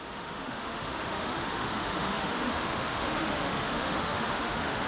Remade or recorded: remade